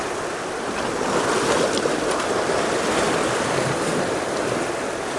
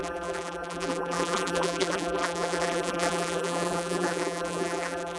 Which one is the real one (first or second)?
first